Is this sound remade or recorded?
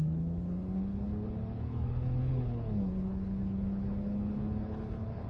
remade